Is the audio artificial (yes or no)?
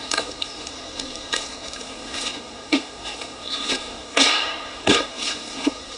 yes